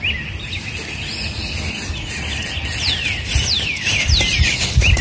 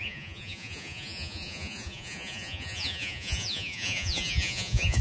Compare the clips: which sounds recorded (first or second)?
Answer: first